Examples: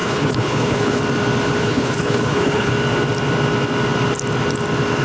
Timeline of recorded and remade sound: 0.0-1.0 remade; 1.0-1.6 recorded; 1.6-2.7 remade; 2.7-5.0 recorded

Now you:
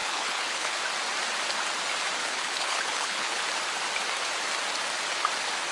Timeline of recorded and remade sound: 0.0-0.8 remade; 0.8-2.2 recorded; 2.2-3.4 remade; 3.4-5.7 recorded

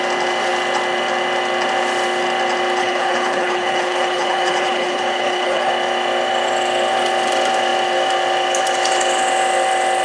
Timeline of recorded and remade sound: 0.0-2.8 recorded; 2.8-5.7 remade; 5.7-10.0 recorded

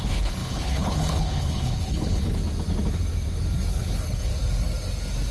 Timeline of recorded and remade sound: 0.0-2.4 remade; 2.4-3.7 recorded; 3.7-4.3 remade; 4.3-5.3 recorded